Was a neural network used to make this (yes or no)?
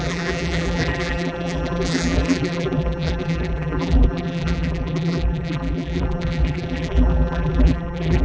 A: yes